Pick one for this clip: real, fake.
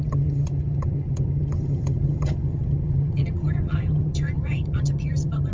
fake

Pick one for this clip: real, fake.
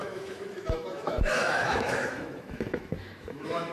fake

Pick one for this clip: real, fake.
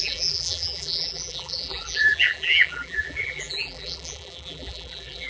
fake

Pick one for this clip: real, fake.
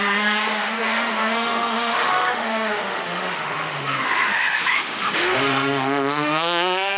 fake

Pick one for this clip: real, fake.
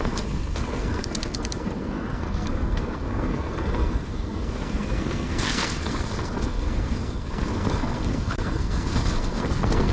fake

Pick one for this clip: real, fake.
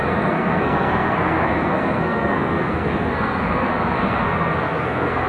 fake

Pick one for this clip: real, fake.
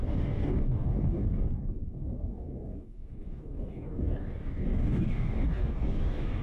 fake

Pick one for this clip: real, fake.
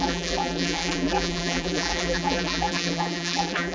fake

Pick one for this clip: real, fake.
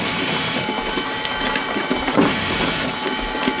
fake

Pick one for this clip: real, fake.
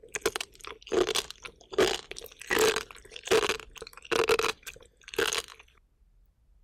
real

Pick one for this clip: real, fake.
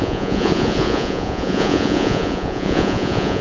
fake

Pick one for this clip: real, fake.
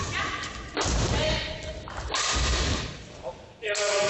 real